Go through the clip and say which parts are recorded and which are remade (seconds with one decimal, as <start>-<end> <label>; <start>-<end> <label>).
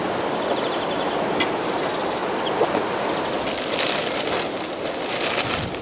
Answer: 0.0-5.8 recorded